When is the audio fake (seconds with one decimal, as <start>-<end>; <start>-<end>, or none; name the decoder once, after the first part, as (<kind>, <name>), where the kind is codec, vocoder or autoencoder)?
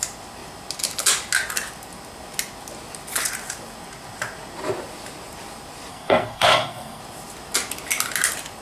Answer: 5.9-7.0 (codec, SNAC)